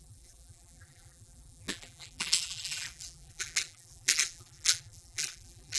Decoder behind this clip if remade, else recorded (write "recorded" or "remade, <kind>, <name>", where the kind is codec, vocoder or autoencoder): remade, vocoder, BigVGAN v2